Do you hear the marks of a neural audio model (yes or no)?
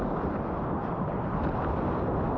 no